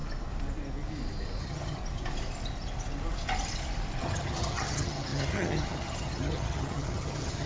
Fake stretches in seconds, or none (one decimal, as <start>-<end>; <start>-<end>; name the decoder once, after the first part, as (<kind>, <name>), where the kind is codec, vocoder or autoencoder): 1.4-1.8 (vocoder, HiFi-GAN); 4.0-7.5